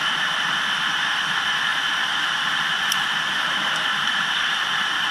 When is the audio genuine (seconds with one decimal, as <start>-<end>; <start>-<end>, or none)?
0.0-5.1